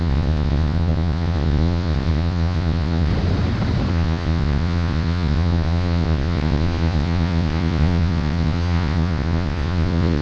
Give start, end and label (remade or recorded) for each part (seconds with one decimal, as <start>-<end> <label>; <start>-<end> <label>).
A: 0.0-3.1 remade; 3.1-3.9 recorded; 3.9-10.2 remade